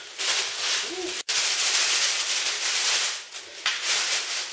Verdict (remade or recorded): recorded